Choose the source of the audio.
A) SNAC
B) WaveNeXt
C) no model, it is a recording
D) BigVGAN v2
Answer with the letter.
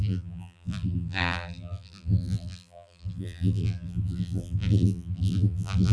D